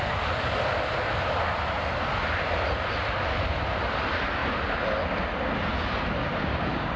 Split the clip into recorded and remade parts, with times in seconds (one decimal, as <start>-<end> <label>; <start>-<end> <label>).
0.0-6.2 recorded; 6.2-7.0 remade